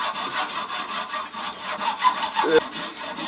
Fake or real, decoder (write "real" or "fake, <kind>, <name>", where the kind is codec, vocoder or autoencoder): fake, vocoder, BigVGAN v2